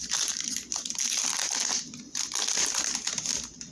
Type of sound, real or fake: real